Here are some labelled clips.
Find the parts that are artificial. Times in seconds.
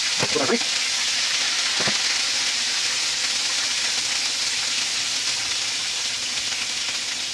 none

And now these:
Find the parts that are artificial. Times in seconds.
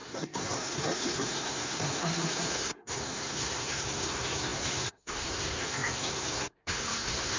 0.0-7.4 (codec, SNAC)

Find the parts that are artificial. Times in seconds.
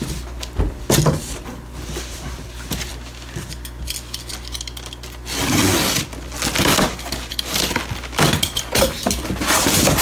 none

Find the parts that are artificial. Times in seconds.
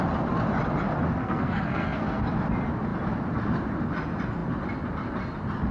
1.2-2.2 (codec, SNAC)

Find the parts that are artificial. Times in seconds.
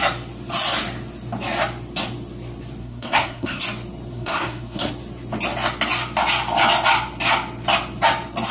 2.8-3.6 (codec, SNAC); 4.1-4.9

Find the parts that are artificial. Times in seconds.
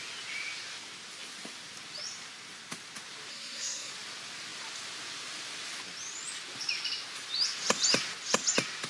3.3-3.9 (codec, SNAC)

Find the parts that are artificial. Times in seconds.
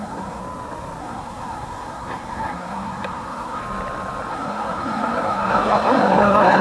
0.0-0.4 (codec, SNAC); 1.0-3.6; 4.3-6.6